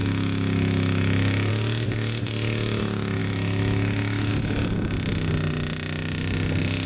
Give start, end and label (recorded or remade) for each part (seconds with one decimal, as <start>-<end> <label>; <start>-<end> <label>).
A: 0.0-1.5 remade; 1.5-3.2 recorded; 3.2-4.3 remade; 4.3-6.9 recorded